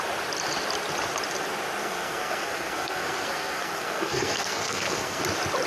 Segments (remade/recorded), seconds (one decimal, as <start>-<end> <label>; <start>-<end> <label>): 0.0-1.8 recorded; 1.8-5.2 remade; 5.2-5.7 recorded